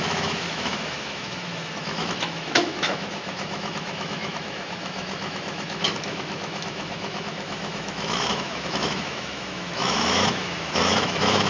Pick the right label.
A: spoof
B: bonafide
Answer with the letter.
A